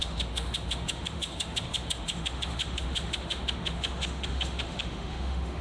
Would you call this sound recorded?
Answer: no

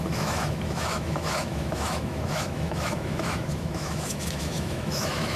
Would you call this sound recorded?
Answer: no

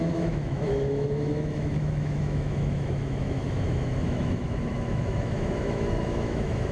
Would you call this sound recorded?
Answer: no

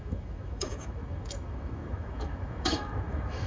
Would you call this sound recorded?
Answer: no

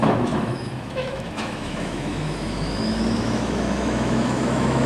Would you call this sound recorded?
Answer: no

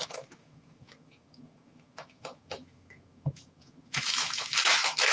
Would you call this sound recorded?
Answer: no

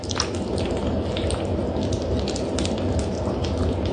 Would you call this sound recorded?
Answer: yes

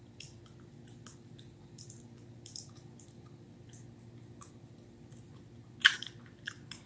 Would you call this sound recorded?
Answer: yes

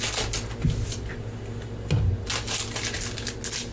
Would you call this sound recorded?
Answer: yes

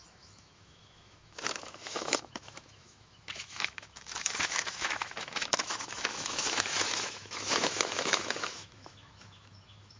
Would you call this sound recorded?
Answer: no